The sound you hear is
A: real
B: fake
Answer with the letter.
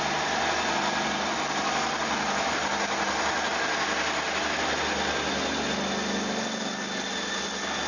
A